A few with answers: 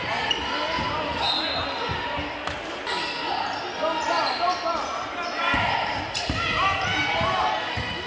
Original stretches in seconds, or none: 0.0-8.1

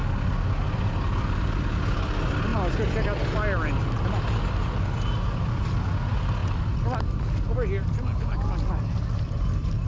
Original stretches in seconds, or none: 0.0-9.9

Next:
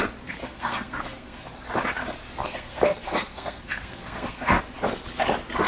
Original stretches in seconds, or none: 0.0-0.4; 1.4-2.4; 4.6-5.7

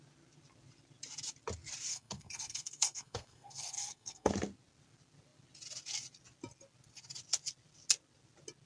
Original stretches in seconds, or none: 0.0-1.9; 4.3-8.7

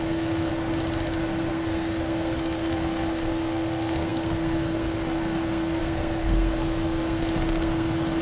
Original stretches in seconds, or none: 0.5-1.5